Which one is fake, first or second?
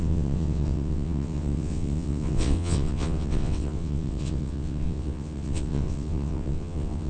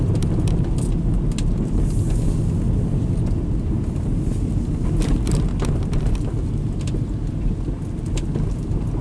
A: first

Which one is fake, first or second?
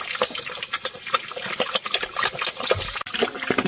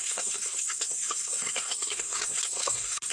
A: second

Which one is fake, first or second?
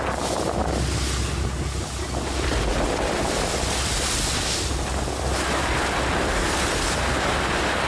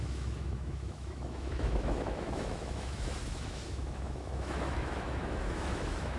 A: second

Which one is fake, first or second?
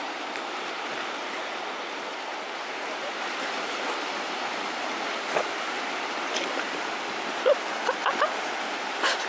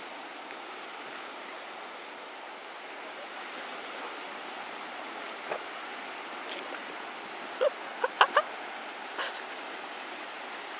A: first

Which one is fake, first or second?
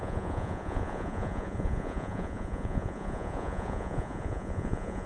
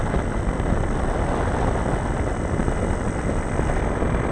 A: first